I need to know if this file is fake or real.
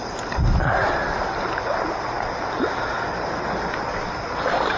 real